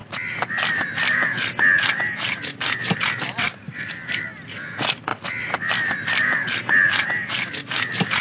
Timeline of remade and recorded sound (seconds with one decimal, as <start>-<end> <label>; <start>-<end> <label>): 0.0-8.2 recorded